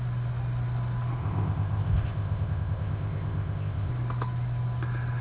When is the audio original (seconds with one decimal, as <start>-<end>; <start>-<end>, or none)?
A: 0.0-1.2; 3.9-5.2